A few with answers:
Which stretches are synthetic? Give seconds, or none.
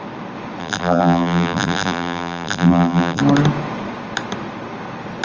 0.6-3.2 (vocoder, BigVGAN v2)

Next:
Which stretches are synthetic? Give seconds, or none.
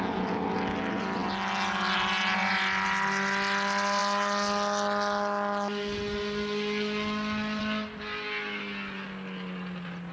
none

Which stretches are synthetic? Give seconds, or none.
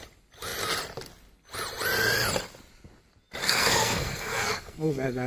3.4-5.3 (codec, SNAC)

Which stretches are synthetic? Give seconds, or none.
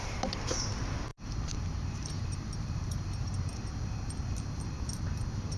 0.0-3.5 (vocoder, BigVGAN v2); 4.7-5.6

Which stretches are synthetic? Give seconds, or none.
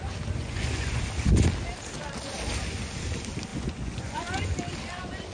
0.4-1.0 (vocoder, Vocos); 3.5-4.5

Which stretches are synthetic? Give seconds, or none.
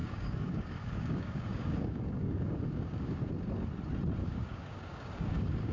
0.0-3.3 (codec, DAC); 4.2-5.7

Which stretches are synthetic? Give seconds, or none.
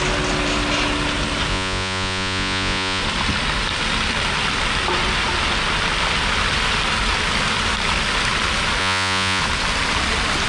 1.5-3.0 (vocoder, Vocos); 8.8-9.4